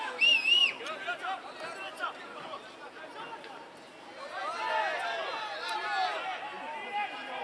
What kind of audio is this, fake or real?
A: real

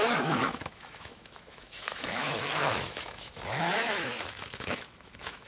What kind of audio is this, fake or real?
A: fake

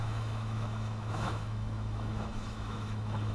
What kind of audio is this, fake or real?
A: fake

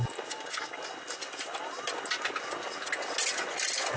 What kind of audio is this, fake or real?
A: real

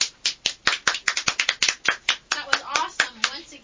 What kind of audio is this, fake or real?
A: real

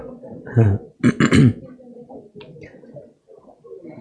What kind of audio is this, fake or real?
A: real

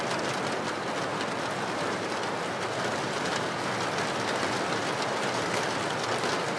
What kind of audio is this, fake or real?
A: real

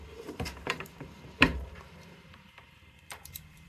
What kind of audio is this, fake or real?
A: fake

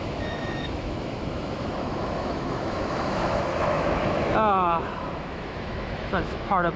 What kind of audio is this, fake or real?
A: fake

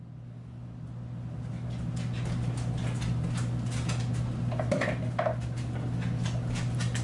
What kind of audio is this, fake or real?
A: real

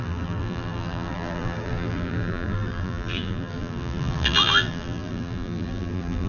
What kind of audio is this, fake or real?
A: fake